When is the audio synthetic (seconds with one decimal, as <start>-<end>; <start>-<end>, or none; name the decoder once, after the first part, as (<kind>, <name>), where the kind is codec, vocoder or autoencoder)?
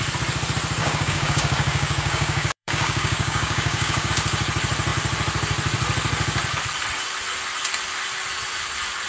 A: 0.8-4.1 (codec, DAC)